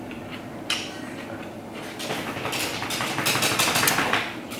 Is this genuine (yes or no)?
yes